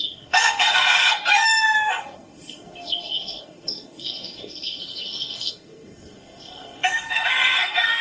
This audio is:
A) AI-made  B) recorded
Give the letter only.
A